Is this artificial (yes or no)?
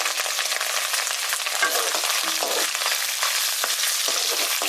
no